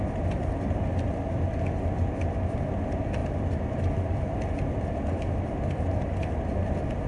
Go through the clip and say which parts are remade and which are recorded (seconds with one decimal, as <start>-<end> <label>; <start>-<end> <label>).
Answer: 0.0-7.1 recorded